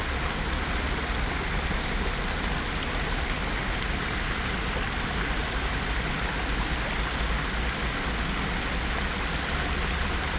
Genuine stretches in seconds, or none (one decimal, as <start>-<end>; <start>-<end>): 0.0-10.4